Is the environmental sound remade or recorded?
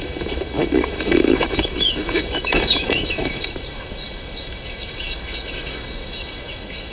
remade